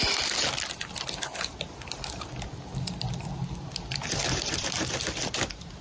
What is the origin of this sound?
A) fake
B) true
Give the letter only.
B